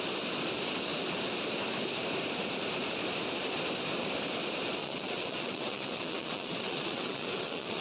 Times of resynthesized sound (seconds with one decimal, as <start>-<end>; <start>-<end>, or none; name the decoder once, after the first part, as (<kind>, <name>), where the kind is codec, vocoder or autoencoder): 4.8-7.8 (vocoder, WaveNeXt)